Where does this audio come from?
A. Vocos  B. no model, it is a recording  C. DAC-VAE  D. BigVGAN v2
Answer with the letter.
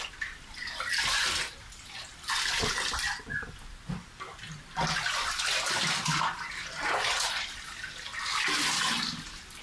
B